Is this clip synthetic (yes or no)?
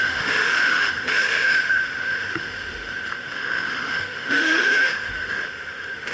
yes